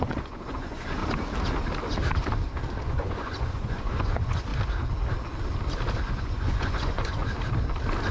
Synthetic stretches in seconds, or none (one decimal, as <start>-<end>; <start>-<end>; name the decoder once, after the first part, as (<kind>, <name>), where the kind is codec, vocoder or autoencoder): 0.0-1.0 (vocoder, Vocos); 2.8-4.5; 6.2-7.2